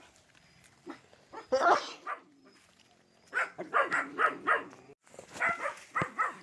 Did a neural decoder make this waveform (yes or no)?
no